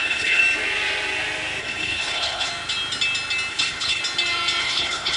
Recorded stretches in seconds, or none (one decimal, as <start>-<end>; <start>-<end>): 0.4-1.6; 2.5-3.5; 4.0-4.6